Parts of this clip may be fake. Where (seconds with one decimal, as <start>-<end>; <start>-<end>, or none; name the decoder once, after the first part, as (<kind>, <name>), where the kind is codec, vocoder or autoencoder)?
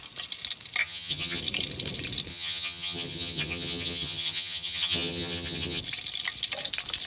0.8-1.4 (vocoder, HiFi-GAN); 2.3-5.8